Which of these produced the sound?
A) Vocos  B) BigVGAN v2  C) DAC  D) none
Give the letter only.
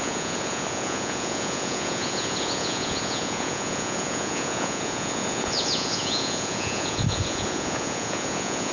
A